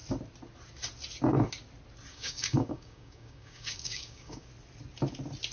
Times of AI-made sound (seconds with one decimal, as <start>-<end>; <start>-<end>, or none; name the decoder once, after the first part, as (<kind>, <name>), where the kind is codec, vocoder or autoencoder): 2.1-4.5 (codec, DAC)